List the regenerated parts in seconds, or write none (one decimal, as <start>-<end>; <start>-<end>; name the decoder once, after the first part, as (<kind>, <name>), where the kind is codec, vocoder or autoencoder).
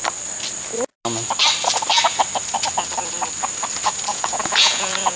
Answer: 4.1-5.2 (vocoder, Vocos)